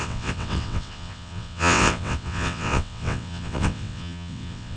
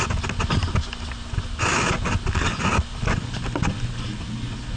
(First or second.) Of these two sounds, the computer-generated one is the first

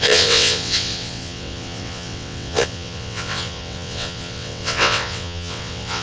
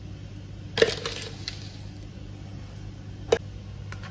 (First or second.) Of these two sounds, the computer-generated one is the first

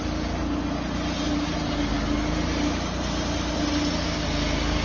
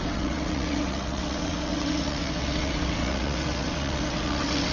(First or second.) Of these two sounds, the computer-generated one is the second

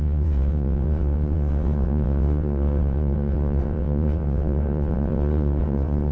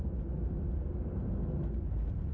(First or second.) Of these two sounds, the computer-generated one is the first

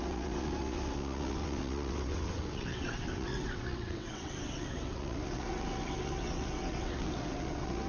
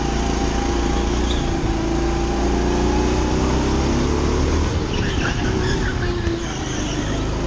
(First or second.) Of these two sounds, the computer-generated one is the first